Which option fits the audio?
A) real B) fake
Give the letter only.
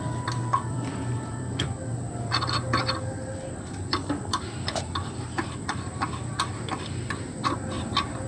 B